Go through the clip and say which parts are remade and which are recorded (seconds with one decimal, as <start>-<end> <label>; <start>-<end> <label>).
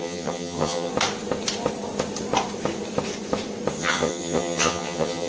0.0-0.9 remade; 0.9-3.8 recorded; 3.8-5.3 remade